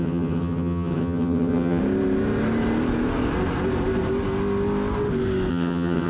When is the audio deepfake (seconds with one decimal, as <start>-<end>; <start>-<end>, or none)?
0.0-1.8; 5.5-6.1